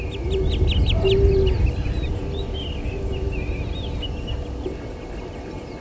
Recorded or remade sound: recorded